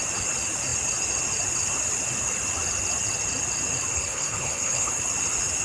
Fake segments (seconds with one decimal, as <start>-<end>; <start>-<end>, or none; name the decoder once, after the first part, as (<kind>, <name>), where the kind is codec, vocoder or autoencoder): 3.9-4.9 (codec, HILCodec)